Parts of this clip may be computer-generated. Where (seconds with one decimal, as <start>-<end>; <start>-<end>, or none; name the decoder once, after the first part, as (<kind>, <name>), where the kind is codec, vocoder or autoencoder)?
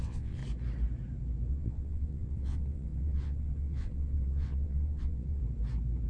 0.0-0.4 (vocoder, WaveNeXt); 1.5-5.4